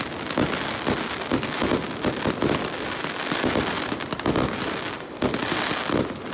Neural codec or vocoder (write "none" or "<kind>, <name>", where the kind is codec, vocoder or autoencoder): none